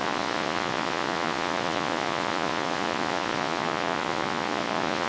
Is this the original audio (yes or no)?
no